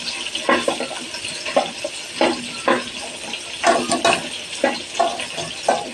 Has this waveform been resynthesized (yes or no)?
no